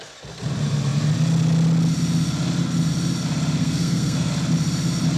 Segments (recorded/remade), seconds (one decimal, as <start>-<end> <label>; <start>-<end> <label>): 0.0-3.6 recorded; 3.6-4.3 remade; 4.3-5.2 recorded

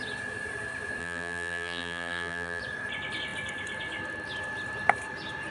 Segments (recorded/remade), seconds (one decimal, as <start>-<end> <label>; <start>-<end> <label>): 0.0-1.0 recorded; 1.0-2.6 remade; 2.6-5.5 recorded